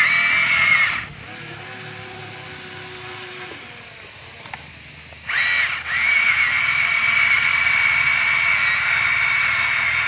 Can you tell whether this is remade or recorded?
recorded